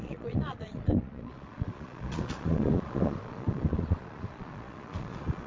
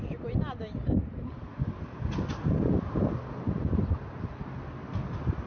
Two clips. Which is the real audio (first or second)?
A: second